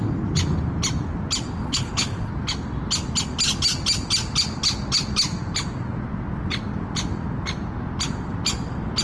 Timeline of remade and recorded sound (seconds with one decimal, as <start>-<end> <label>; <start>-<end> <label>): 0.0-1.6 recorded; 1.6-2.3 remade; 2.3-9.0 recorded